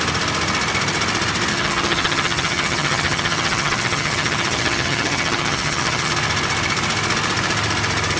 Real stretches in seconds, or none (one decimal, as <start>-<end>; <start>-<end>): 0.0-1.5; 6.1-8.2